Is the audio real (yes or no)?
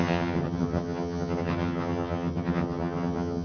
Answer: no